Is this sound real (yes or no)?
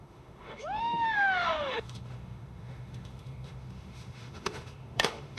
no